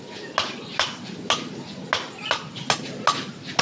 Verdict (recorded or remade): recorded